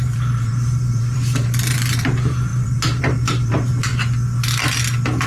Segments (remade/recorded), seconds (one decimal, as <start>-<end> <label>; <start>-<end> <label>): 0.0-3.9 remade; 3.9-5.3 recorded